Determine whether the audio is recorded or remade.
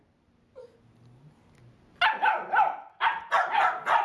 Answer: recorded